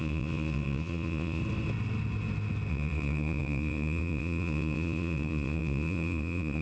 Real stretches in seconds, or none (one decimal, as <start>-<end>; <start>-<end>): 1.4-2.7